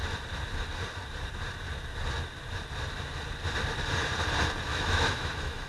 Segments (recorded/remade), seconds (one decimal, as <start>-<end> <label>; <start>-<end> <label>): 0.0-4.7 recorded; 4.7-5.7 remade